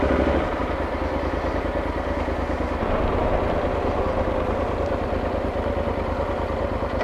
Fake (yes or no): no